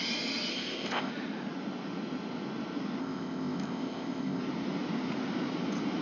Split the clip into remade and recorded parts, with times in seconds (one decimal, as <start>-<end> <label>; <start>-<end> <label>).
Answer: 0.0-0.5 recorded; 0.5-1.1 remade; 1.1-3.0 recorded; 3.0-4.4 remade; 4.4-6.0 recorded